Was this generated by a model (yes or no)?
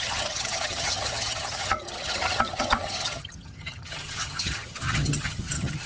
yes